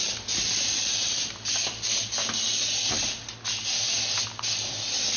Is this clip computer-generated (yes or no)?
no